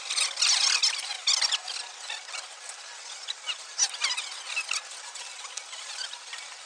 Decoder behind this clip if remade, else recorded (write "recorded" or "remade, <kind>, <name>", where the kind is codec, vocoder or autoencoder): recorded